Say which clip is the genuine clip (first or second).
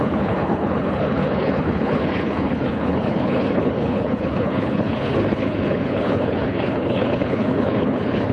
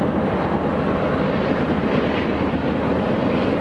second